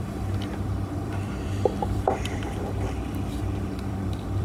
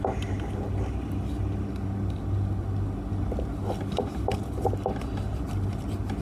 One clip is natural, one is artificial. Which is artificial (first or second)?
first